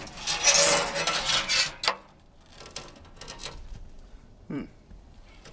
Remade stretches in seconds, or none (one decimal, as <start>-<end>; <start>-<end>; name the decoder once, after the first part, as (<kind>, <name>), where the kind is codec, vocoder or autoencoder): 3.4-5.5 (vocoder, BigVGAN v2)